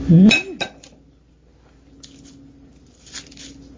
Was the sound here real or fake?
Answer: real